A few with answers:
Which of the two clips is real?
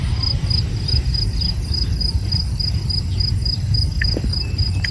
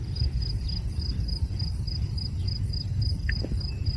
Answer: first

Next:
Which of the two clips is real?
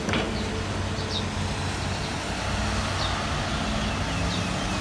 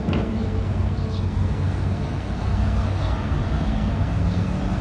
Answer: first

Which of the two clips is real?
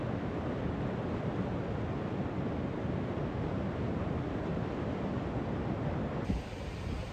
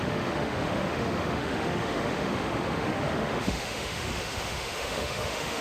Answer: first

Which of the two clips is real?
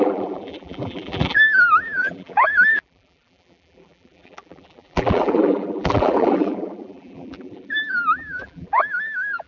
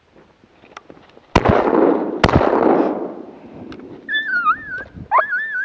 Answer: second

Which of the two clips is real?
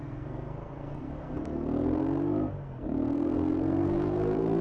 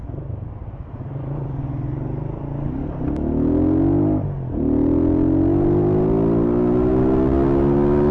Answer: second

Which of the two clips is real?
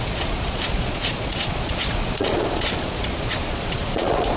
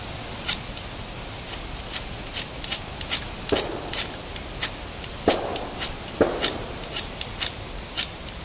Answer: second